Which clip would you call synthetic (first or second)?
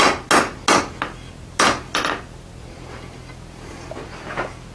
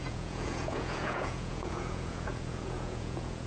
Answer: second